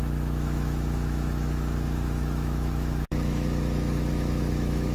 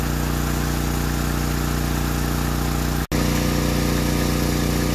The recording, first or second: second